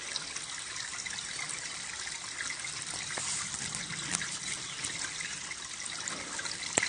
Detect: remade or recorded recorded